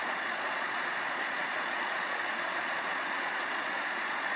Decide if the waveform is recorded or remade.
remade